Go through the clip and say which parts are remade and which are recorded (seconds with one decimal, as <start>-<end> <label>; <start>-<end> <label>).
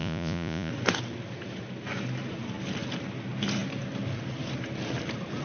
0.0-0.7 remade; 0.7-5.4 recorded